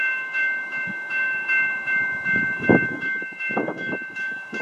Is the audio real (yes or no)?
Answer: no